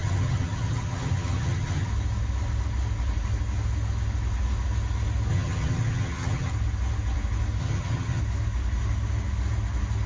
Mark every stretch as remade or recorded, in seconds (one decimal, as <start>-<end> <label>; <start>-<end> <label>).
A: 0.0-1.9 remade; 1.9-5.3 recorded; 5.3-6.5 remade; 6.5-7.6 recorded; 7.6-8.2 remade; 8.2-10.1 recorded